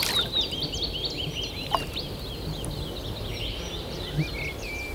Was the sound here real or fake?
real